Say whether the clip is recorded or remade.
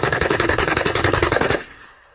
remade